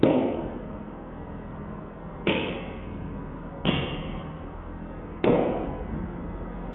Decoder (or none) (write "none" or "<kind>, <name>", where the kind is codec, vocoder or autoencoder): codec, SNAC